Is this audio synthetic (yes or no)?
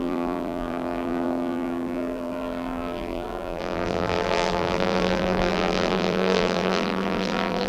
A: yes